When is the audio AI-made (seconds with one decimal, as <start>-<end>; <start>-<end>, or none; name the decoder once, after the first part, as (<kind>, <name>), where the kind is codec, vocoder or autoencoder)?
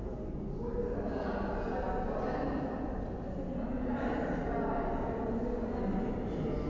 none